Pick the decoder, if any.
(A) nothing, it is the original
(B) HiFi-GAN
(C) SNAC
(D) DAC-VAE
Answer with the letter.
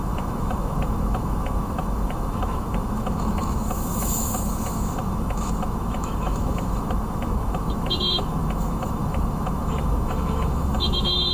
D